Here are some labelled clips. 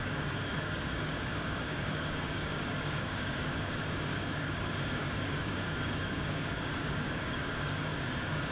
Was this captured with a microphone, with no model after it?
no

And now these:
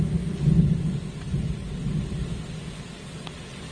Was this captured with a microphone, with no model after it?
yes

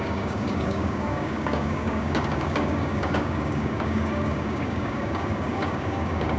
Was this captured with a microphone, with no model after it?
no